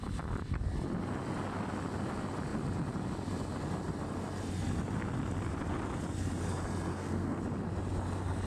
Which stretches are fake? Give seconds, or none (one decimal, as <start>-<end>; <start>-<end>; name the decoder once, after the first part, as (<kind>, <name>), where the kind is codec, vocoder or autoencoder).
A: 6.9-7.4 (codec, SNAC)